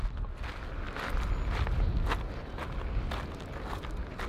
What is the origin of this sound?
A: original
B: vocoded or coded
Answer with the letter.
A